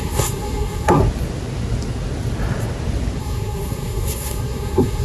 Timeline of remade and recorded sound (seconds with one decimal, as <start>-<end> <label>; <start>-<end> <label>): 0.0-1.0 remade; 1.0-3.2 recorded; 3.2-5.0 remade